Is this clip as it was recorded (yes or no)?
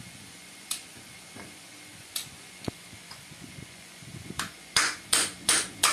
no